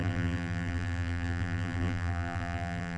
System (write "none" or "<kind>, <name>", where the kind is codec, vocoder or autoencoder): vocoder, BigVGAN v2